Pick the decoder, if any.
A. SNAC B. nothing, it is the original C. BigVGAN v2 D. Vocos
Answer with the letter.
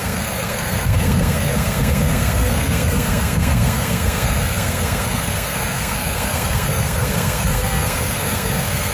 A